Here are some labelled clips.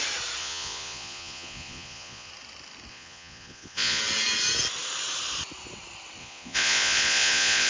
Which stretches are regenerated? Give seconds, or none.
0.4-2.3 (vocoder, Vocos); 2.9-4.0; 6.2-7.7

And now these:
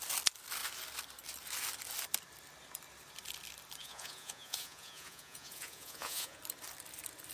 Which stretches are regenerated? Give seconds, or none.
3.8-6.4 (vocoder, Vocos)

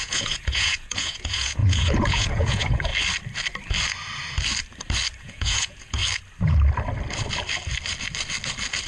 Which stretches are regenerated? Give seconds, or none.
0.0-2.9 (vocoder, Vocos); 5.2-6.0